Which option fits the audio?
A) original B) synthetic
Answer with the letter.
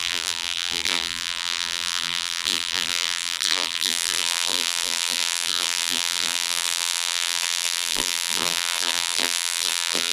B